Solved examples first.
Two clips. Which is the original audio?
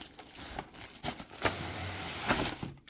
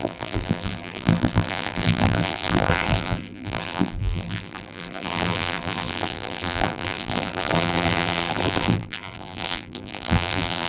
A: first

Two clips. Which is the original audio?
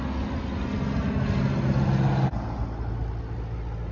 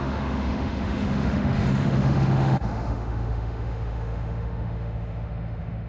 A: first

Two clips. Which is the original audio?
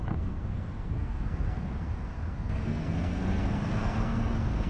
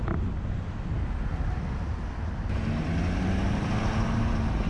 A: second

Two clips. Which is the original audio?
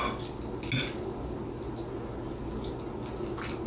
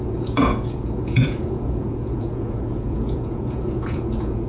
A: first